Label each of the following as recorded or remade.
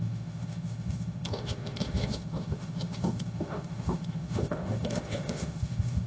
remade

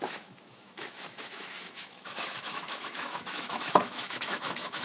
remade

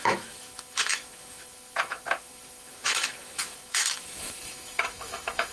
remade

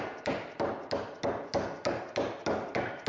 recorded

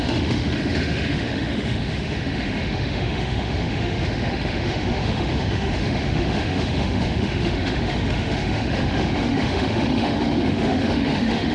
remade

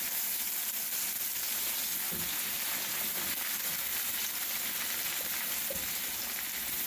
recorded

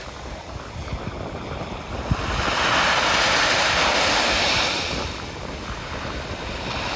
recorded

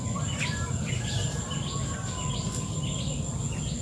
recorded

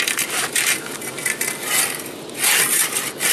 recorded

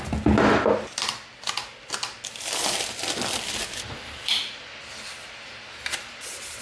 recorded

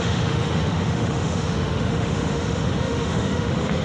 remade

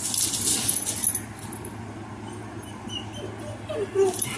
recorded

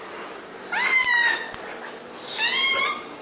recorded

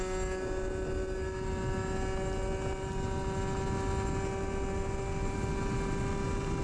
recorded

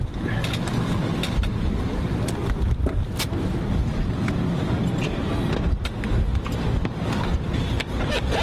recorded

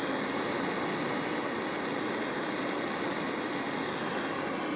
recorded